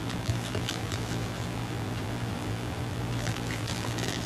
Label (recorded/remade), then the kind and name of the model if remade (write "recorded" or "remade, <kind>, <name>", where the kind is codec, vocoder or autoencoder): remade, vocoder, BigVGAN v2